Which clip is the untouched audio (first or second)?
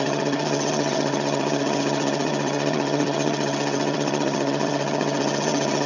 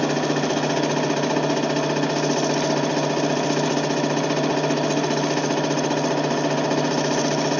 second